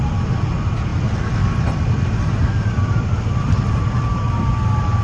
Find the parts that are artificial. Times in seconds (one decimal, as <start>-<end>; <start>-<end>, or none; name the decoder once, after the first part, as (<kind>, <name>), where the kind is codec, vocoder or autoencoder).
0.9-3.8 (vocoder, BigVGAN v2)